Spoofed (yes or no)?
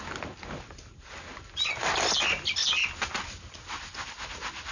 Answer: no